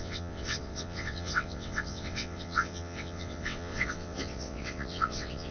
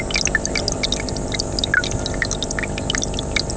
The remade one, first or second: first